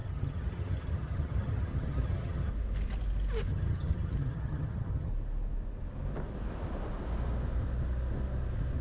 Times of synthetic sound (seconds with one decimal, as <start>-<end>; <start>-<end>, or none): 0.0-2.5; 3.5-5.1